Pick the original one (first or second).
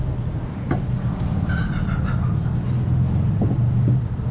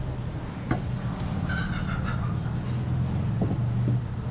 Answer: second